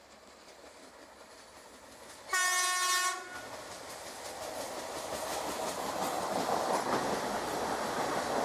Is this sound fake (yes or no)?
no